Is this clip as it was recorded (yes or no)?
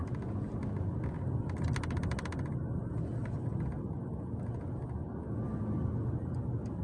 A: yes